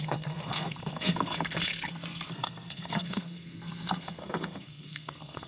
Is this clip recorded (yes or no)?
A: no